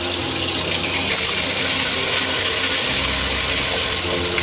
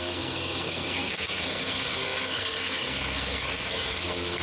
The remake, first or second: second